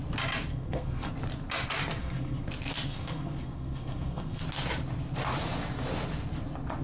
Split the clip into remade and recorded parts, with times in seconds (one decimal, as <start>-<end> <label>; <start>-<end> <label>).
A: 0.0-0.5 recorded; 0.5-1.1 remade; 1.1-2.0 recorded; 2.0-2.5 remade; 2.5-2.9 recorded; 2.9-4.4 remade; 4.4-6.8 recorded